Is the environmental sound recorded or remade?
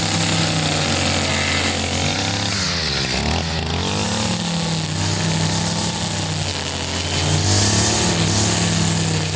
recorded